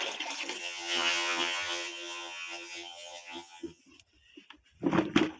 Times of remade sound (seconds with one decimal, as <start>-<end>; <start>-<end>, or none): 0.6-3.8

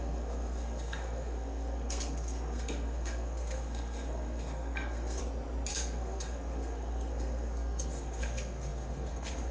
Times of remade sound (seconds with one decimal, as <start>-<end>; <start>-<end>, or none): 0.0-5.2; 5.7-9.5